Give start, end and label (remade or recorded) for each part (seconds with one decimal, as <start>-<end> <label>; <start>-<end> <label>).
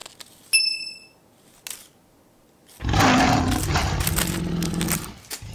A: 0.0-3.8 recorded; 3.8-4.3 remade; 4.3-5.5 recorded